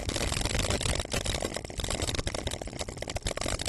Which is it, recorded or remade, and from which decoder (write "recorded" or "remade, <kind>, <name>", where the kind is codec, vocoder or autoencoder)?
recorded